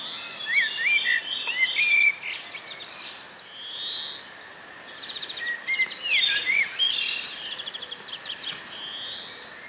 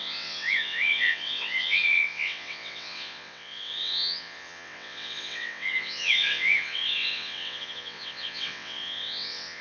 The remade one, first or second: second